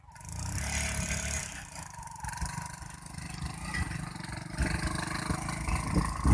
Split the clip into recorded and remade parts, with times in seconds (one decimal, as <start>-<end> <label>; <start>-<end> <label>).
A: 0.0-6.3 recorded